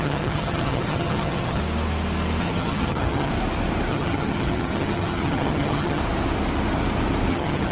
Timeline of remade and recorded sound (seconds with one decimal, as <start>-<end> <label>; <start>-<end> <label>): 0.0-1.6 remade; 1.6-2.4 recorded; 2.4-3.3 remade; 3.3-3.9 recorded; 3.9-6.0 remade; 6.0-7.3 recorded; 7.3-7.7 remade